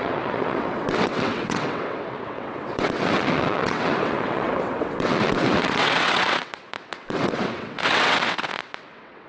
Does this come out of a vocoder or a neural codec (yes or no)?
yes